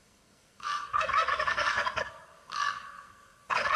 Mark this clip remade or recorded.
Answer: remade